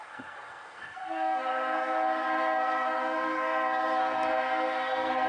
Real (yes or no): no